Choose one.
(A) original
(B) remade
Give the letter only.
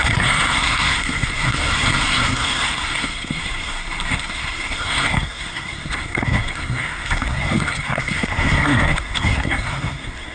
B